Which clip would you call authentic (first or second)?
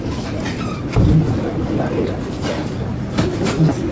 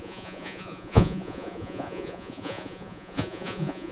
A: first